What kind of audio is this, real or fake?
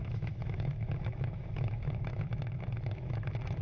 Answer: fake